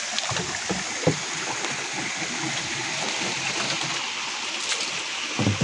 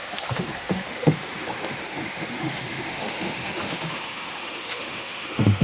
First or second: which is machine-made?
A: second